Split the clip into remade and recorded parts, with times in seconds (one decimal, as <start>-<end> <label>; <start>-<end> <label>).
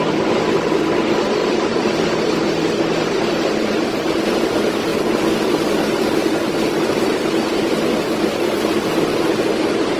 0.0-1.4 recorded; 1.4-2.1 remade; 2.1-10.0 recorded